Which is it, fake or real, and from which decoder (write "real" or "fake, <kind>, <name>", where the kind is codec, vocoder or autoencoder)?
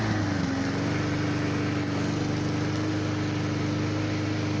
real